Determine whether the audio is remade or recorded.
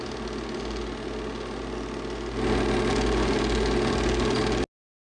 recorded